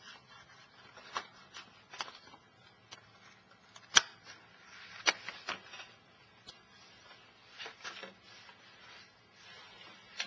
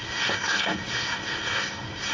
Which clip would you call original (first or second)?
first